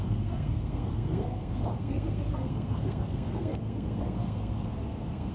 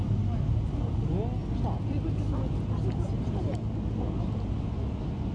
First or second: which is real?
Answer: second